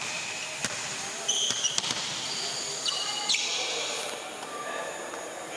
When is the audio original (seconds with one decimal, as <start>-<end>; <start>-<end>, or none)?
0.0-0.6; 3.9-5.6